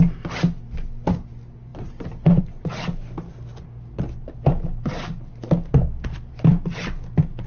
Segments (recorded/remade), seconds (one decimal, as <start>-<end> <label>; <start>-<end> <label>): 0.0-7.5 recorded